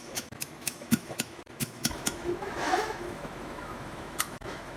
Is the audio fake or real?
fake